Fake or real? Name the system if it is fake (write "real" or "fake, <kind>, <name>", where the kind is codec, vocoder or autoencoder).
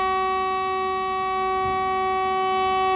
real